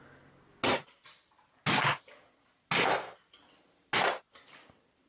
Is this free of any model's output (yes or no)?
yes